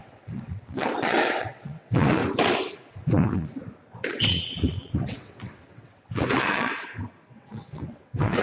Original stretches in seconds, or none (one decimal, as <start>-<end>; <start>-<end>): 2.2-2.9; 3.6-4.1; 6.7-7.3